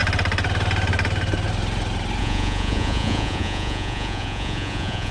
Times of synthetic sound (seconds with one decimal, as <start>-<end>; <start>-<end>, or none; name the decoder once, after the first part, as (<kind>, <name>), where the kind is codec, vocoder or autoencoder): 2.2-5.1 (vocoder, Vocos)